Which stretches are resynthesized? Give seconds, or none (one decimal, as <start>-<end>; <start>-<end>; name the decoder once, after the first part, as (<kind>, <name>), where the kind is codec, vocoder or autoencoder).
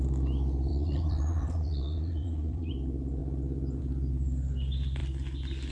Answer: 0.7-2.7 (vocoder, Vocos)